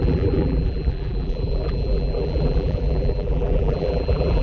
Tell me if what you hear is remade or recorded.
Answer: remade